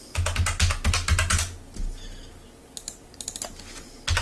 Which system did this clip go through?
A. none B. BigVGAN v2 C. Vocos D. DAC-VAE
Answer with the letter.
A